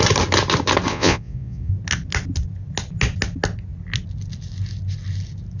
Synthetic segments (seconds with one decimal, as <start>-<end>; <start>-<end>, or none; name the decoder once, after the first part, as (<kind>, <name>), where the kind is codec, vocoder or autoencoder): 0.9-1.7 (vocoder, Vocos)